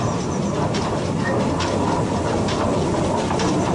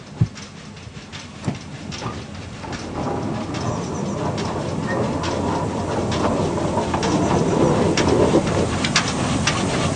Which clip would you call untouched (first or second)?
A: second